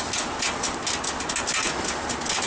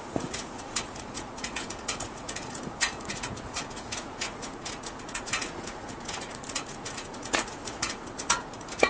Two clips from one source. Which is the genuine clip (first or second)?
first